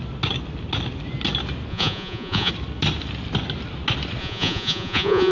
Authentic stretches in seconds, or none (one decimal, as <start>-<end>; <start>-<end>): 0.0-1.7; 2.5-4.2